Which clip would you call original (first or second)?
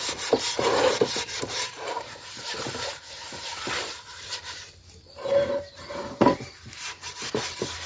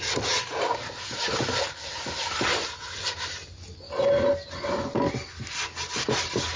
second